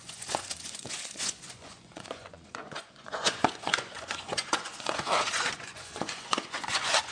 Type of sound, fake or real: fake